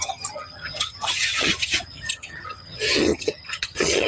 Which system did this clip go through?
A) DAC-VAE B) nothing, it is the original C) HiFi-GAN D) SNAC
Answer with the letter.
C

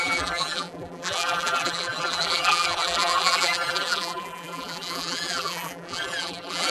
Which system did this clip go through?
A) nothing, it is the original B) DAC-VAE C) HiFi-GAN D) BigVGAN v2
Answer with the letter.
D